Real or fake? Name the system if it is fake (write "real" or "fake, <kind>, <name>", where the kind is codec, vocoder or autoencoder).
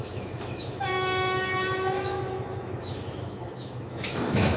fake, autoencoder, DAC-VAE